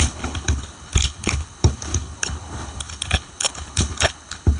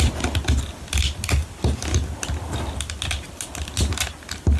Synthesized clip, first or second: first